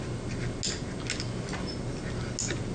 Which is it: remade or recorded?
recorded